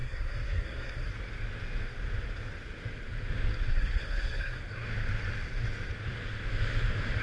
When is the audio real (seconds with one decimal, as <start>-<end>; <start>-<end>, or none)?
1.1-3.7; 4.6-7.2